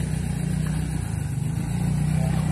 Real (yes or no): yes